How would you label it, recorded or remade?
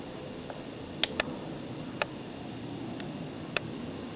recorded